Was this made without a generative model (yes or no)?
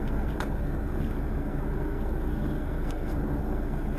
no